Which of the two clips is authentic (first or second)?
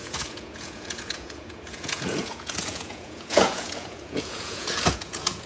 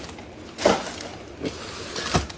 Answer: second